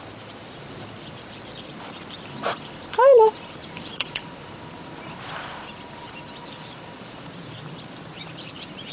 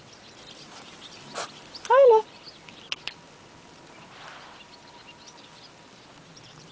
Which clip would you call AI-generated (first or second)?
first